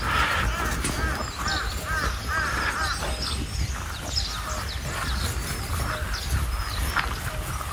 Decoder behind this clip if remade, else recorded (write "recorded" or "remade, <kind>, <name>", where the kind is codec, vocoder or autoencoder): recorded